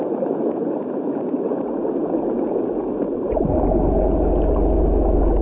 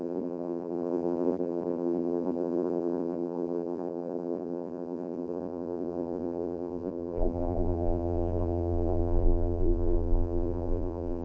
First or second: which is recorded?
first